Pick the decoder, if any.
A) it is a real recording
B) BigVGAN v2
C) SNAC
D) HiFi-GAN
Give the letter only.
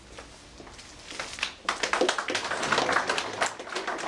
A